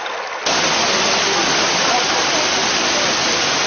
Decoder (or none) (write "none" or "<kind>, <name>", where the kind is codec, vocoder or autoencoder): none